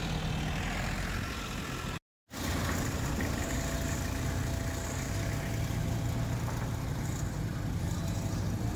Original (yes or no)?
yes